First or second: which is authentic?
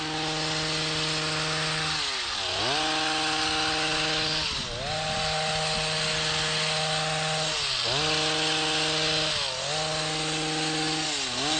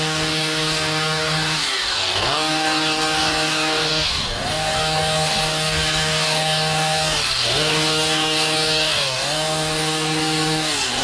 first